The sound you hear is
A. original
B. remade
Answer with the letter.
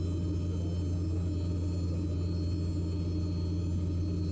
A